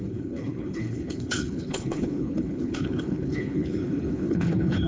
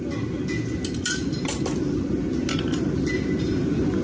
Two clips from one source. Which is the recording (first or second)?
second